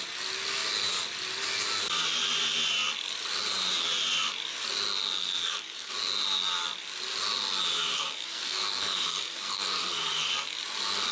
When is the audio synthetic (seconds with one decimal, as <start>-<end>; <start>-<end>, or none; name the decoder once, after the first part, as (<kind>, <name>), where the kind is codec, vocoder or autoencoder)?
5.2-5.9 (codec, SNAC); 7.9-10.3